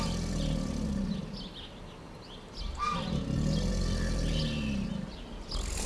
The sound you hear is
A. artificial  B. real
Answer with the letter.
B